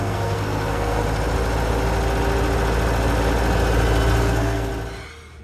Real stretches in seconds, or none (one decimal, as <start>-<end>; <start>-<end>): 1.0-4.2; 4.7-5.4